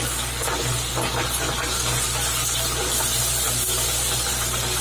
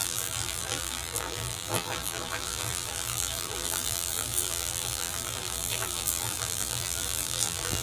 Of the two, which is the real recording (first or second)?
first